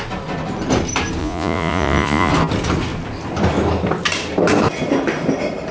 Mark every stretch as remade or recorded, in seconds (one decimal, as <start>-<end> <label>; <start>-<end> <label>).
0.0-1.2 recorded; 1.2-2.3 remade; 2.3-5.7 recorded